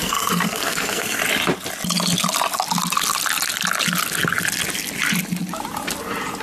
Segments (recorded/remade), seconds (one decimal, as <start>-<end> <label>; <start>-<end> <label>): 0.0-1.2 remade; 1.2-6.4 recorded